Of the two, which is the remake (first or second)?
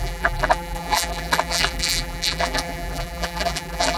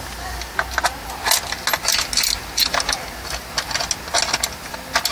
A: first